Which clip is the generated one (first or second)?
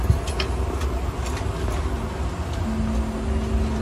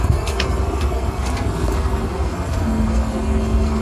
second